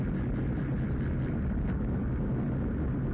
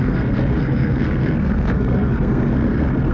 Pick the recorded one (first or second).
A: first